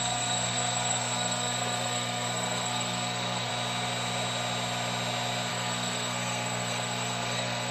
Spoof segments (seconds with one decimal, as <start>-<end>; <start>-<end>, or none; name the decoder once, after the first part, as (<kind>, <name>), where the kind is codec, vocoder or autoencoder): 0.0-3.5 (codec, SNAC); 5.5-7.7